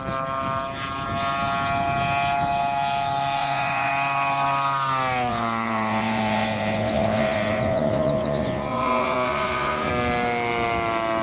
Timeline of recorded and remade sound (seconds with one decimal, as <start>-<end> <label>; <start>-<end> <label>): 0.0-3.4 recorded; 3.4-3.9 remade; 3.9-5.3 recorded; 5.3-9.9 remade; 9.9-11.2 recorded